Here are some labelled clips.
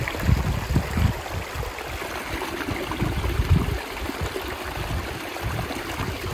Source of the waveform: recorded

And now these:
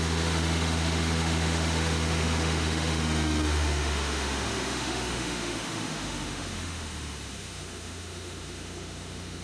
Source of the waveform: remade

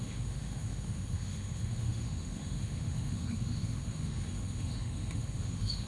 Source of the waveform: remade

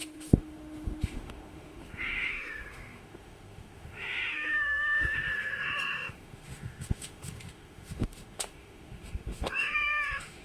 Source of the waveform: remade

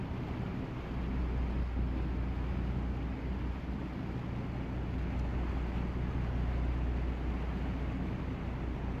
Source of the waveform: recorded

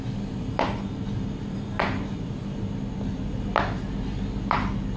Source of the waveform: recorded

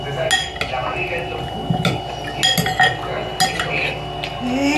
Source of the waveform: recorded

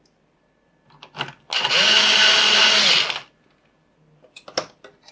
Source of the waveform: recorded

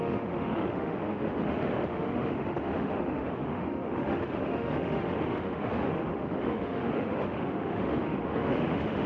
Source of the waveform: remade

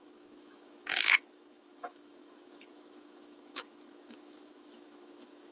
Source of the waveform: remade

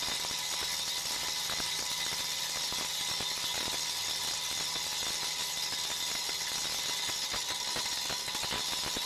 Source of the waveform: recorded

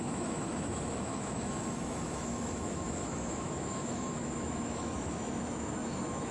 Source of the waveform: remade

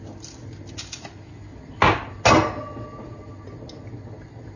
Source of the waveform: recorded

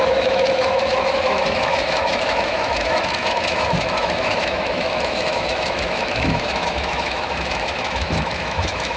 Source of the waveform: remade